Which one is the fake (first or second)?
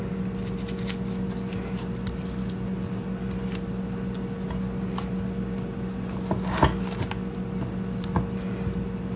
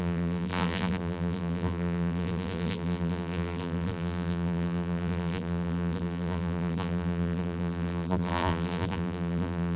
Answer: second